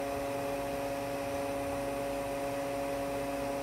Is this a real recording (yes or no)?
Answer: yes